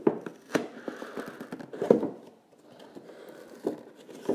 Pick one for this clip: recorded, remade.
recorded